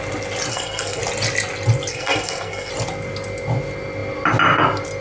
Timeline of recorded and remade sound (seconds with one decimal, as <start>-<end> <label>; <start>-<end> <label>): 0.0-0.5 recorded; 0.5-1.0 remade; 1.0-1.9 recorded; 1.9-2.7 remade; 2.7-5.0 recorded